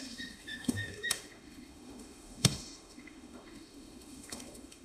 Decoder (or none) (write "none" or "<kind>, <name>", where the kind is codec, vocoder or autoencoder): autoencoder, DAC-VAE